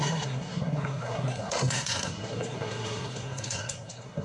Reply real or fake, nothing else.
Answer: fake